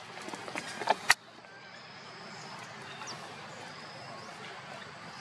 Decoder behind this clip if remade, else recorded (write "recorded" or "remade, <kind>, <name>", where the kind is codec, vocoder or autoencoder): recorded